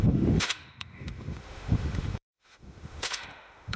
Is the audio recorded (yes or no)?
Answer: no